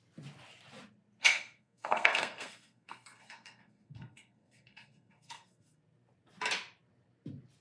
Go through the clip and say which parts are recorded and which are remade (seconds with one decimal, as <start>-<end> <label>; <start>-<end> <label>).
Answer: 0.0-1.2 recorded; 1.2-5.8 remade; 5.8-7.6 recorded